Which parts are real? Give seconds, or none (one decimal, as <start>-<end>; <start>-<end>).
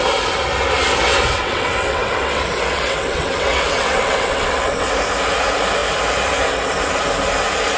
0.0-1.0; 4.9-7.8